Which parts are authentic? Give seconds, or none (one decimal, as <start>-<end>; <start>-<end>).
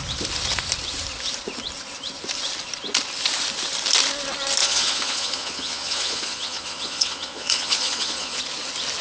0.0-4.6; 8.4-9.0